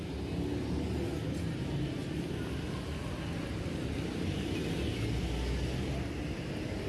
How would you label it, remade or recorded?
recorded